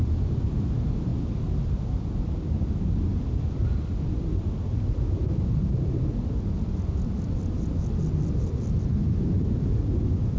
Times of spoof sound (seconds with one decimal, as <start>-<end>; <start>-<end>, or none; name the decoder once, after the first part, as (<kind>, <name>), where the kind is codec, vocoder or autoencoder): 4.7-6.1 (vocoder, BigVGAN v2)